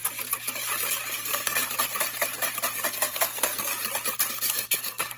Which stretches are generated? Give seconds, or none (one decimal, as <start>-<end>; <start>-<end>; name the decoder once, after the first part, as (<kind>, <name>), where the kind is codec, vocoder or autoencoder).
1.1-1.6 (codec, SNAC); 2.9-3.7; 4.3-5.2